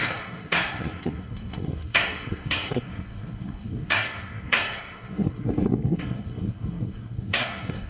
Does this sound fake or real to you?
fake